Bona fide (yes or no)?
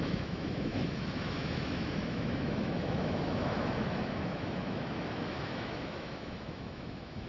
no